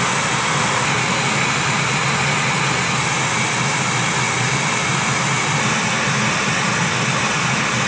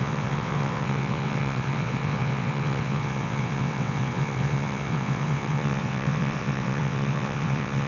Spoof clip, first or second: second